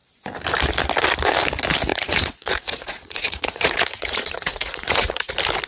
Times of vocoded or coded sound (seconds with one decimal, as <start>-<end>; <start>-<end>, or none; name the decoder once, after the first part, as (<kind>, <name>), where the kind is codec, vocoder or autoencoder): 1.9-5.3 (vocoder, Vocos)